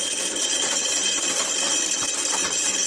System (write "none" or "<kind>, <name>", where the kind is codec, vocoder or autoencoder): none